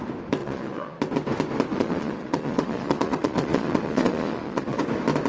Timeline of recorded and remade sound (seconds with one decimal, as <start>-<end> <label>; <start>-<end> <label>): 0.0-0.4 recorded; 0.4-1.0 remade; 1.0-1.7 recorded; 1.7-4.8 remade; 4.8-5.3 recorded